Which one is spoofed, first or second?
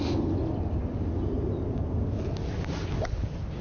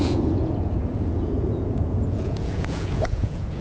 second